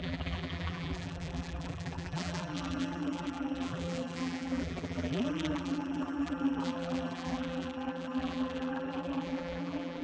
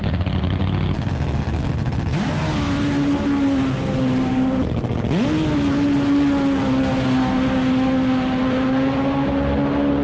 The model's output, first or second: first